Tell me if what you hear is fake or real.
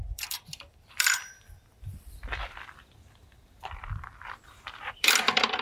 fake